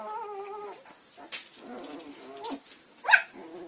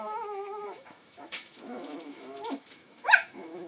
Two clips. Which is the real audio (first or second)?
first